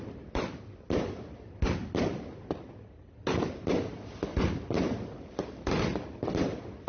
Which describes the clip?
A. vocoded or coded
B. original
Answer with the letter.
B